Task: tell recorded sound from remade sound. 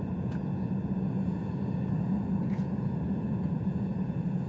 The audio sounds remade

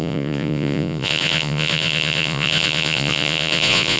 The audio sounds remade